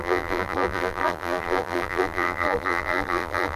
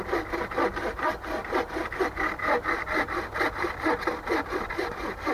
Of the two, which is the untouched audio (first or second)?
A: second